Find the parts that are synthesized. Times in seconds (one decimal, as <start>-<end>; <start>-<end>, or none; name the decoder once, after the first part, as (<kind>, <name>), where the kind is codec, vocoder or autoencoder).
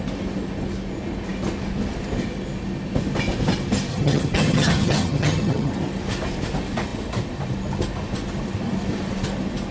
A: 3.9-5.7 (vocoder, HiFi-GAN)